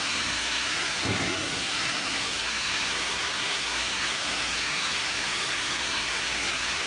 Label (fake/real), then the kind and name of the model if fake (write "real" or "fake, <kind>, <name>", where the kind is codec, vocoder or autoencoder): fake, codec, SNAC